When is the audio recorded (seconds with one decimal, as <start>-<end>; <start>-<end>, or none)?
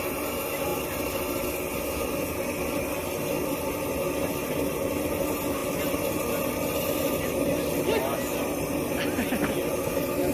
0.0-10.3